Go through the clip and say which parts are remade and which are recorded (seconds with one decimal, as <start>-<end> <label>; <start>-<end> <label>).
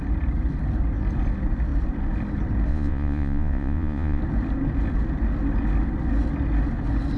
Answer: 0.0-2.7 recorded; 2.7-4.2 remade; 4.2-7.2 recorded